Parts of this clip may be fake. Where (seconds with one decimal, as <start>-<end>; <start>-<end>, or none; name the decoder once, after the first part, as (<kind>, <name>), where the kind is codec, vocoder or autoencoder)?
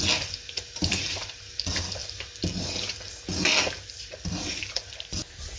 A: none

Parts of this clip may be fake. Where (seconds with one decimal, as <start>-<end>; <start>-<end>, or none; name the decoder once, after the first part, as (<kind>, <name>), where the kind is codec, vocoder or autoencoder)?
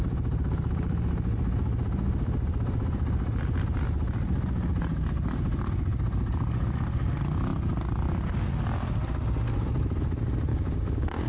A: 10.5-11.3 (codec, DAC)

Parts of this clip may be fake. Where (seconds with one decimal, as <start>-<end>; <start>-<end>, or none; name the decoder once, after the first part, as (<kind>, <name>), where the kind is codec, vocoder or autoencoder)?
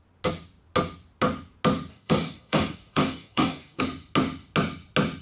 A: 1.9-3.8 (codec, DAC)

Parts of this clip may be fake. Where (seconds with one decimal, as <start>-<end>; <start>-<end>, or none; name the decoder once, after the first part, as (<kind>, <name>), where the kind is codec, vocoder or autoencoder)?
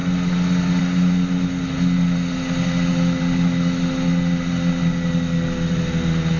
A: none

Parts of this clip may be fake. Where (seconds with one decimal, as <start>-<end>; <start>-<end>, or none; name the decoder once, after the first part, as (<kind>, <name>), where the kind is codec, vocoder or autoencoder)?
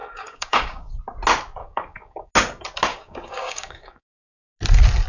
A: 0.0-1.0 (codec, DAC); 1.6-2.3; 2.9-4.4